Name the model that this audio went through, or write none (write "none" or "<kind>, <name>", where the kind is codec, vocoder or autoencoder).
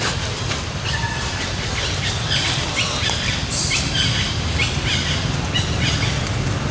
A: none